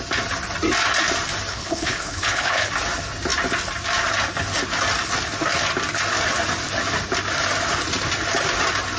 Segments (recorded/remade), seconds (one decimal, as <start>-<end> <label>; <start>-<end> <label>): 0.0-1.5 recorded; 1.5-2.7 remade; 2.7-9.0 recorded